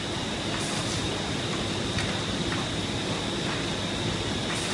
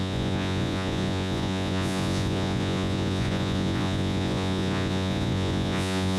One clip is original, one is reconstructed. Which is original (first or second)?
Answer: first